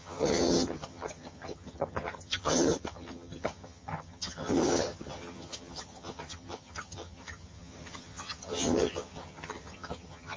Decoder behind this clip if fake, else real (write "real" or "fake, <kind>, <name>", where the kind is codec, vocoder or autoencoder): fake, vocoder, HiFi-GAN